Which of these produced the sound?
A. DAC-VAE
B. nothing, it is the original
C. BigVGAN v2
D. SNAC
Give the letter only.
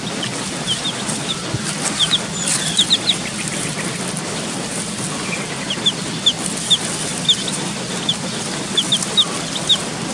B